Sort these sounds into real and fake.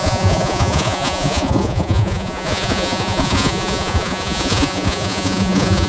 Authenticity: fake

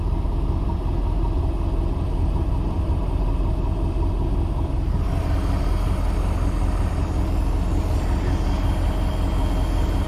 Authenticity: real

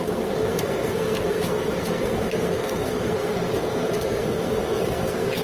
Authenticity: fake